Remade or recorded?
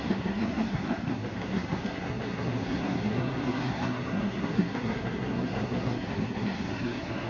remade